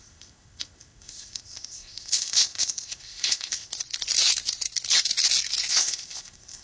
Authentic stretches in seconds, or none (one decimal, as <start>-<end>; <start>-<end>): 3.7-5.7